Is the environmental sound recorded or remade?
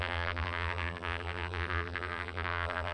remade